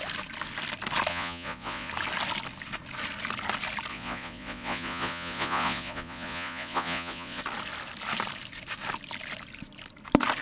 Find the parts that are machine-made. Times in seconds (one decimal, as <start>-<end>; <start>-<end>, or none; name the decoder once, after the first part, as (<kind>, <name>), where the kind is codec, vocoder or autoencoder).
1.1-1.9 (vocoder, Vocos); 3.9-7.4